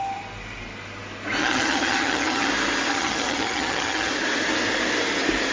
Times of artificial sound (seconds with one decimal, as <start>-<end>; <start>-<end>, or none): 1.4-2.5; 2.9-4.1